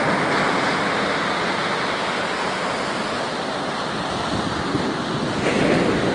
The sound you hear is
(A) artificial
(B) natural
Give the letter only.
B